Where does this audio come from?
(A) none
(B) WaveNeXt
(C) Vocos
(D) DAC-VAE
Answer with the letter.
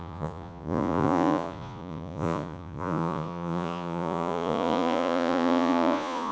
C